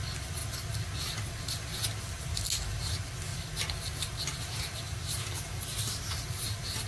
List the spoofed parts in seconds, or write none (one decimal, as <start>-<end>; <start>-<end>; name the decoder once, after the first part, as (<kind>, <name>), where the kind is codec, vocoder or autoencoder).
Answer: none